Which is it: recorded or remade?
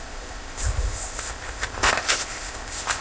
remade